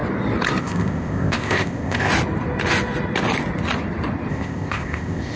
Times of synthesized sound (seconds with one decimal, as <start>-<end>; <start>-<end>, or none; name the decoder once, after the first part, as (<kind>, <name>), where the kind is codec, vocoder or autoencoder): 0.6-2.1 (codec, ZipCodec); 4.3-5.4